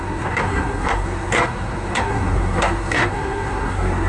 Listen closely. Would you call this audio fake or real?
fake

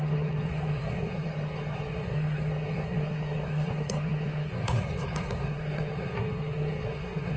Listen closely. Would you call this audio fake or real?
fake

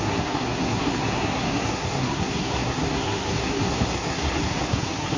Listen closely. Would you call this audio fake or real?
fake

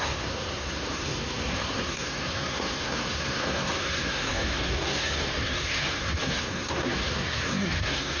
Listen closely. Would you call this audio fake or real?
fake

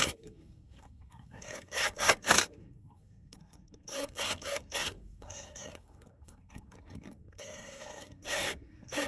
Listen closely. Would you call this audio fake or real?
fake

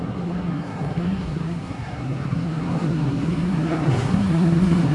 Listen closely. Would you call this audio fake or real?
fake